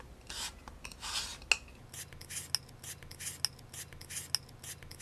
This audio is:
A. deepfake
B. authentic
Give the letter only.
B